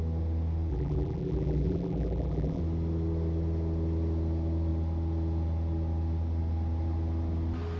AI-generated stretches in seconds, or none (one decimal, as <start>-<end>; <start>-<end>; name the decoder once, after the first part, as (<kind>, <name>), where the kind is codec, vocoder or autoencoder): 0.7-2.6 (vocoder, BigVGAN v2)